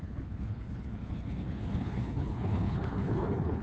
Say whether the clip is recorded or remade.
remade